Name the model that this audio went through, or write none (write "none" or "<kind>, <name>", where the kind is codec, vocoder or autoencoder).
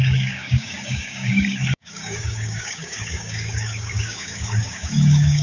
codec, DAC